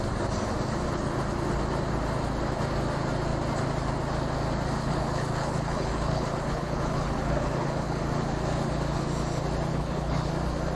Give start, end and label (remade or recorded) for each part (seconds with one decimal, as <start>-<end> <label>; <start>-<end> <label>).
0.0-4.8 recorded; 4.8-8.0 remade; 8.0-9.7 recorded; 9.7-10.3 remade; 10.3-10.8 recorded